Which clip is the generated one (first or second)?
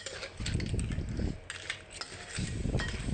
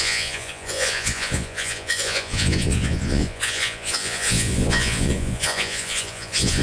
second